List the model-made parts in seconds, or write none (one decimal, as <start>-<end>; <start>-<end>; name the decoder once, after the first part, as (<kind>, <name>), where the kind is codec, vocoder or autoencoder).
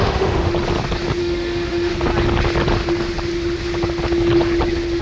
0.0-0.5 (autoencoder, DAC-VAE); 1.2-1.9